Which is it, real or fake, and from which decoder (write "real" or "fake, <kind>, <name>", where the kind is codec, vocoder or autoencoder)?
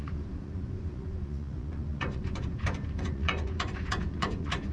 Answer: fake, vocoder, Vocos